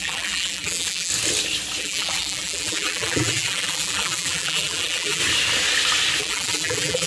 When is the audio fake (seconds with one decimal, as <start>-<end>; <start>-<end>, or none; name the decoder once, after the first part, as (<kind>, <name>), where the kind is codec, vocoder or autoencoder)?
0.0-1.1 (vocoder, BigVGAN v2); 1.8-5.2; 6.2-7.1